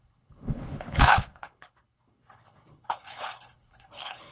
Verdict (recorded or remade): remade